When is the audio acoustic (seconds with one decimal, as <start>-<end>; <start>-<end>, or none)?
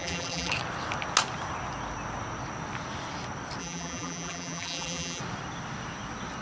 0.5-3.6; 5.2-6.4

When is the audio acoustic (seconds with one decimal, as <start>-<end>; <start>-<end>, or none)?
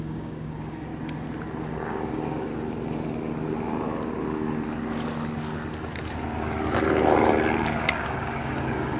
0.9-1.7; 2.5-7.6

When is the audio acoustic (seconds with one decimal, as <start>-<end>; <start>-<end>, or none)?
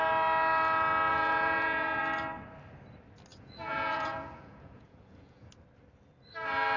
0.0-1.1; 2.0-3.3; 5.5-6.8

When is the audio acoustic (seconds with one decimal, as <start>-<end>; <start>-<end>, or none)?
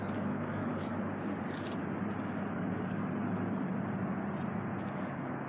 0.9-2.5; 3.0-4.8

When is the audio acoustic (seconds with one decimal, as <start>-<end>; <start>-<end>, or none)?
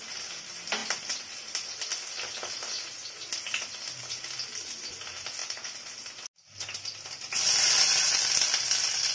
0.0-9.1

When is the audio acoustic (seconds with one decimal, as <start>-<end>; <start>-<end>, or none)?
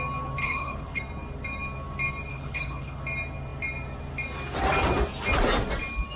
0.0-0.4; 1.0-2.3; 3.0-6.2